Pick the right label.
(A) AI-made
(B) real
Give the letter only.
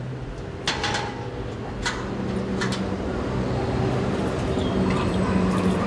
B